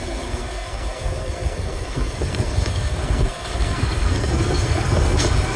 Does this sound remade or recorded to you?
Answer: remade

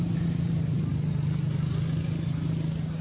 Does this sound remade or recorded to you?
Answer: recorded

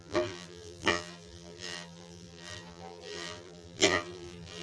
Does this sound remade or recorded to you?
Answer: remade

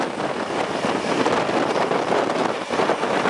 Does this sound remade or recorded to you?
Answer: recorded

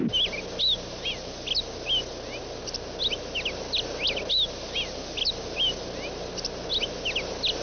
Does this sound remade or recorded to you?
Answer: recorded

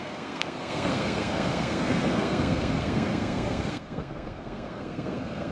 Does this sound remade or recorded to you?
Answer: remade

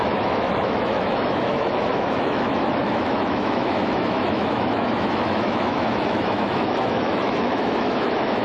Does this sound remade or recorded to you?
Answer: remade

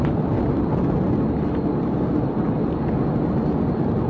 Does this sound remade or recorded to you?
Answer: recorded